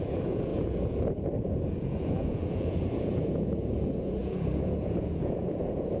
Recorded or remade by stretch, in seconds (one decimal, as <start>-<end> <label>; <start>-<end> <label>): 0.0-6.0 remade